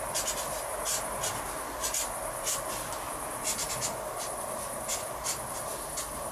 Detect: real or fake real